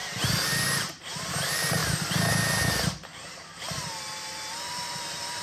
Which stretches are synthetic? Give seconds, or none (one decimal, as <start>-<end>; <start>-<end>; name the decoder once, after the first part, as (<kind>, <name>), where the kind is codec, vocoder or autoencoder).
1.3-1.8 (vocoder, BigVGAN v2); 5.0-5.4